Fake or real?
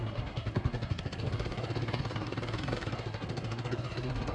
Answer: fake